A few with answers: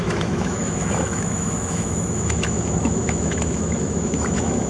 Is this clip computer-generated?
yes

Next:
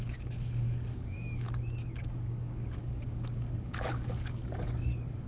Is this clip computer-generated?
yes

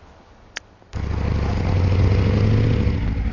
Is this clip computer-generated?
no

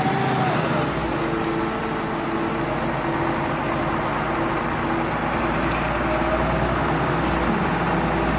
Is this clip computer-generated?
no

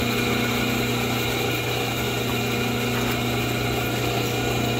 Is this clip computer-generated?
no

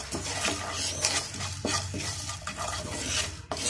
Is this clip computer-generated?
no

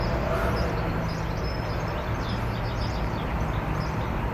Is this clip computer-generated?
no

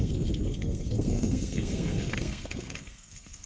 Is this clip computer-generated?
yes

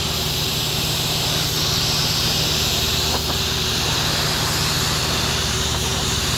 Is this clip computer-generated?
yes